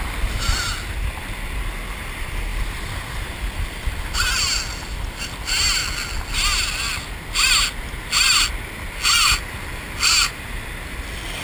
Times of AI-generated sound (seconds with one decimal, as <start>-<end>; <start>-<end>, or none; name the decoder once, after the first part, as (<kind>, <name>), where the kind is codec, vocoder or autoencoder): 2.5-4.3 (vocoder, BigVGAN v2)